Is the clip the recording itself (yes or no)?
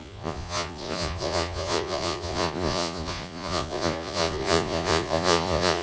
no